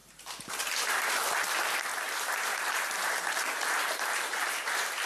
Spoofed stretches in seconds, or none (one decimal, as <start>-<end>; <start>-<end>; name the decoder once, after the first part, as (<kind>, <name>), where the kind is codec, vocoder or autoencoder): 0.0-1.1 (vocoder, BigVGAN v2); 1.9-5.1